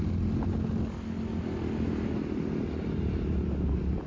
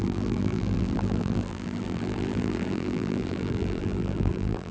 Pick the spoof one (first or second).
second